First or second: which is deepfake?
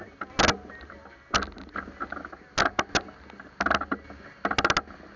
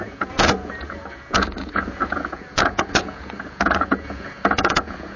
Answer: second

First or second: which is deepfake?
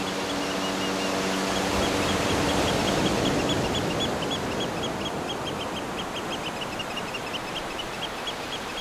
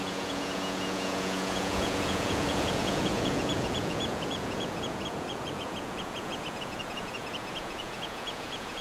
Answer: second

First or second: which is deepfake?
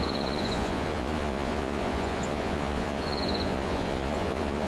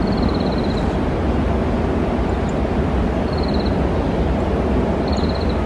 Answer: first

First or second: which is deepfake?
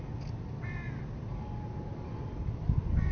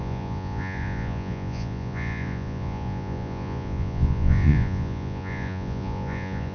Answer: second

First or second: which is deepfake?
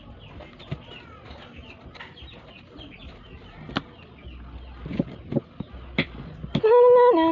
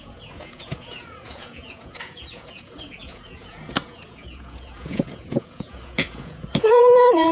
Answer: second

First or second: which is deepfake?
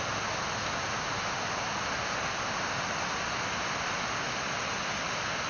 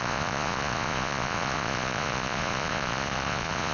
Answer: second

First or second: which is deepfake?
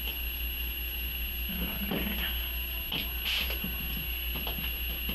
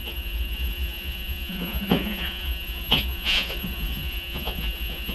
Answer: second